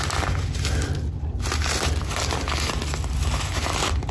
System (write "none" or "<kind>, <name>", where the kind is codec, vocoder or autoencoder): none